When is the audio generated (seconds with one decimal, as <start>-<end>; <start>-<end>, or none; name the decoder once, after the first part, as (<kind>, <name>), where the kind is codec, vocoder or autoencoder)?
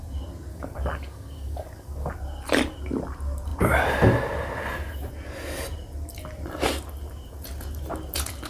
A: 0.5-2.1 (codec, DAC)